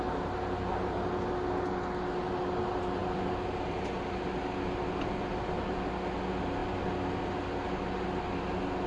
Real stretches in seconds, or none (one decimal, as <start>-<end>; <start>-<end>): 0.0-8.9